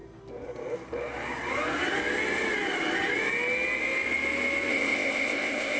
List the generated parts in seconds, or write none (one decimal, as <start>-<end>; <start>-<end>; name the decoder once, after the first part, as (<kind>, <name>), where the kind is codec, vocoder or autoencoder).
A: 4.7-5.8 (codec, ZipCodec)